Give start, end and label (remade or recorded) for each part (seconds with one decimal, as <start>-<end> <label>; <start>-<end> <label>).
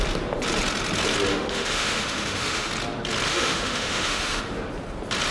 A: 0.0-1.3 recorded; 1.3-2.7 remade; 2.7-3.3 recorded; 3.3-4.4 remade; 4.4-5.3 recorded